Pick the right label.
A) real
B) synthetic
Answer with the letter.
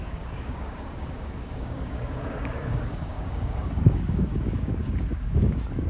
B